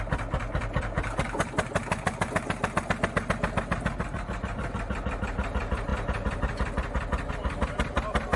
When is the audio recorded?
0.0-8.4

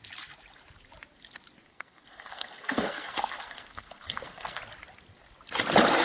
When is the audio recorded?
0.0-1.7; 4.6-6.0

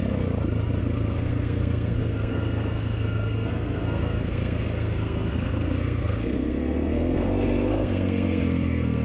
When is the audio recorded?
0.0-0.8

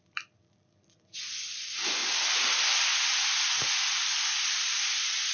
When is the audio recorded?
0.0-5.3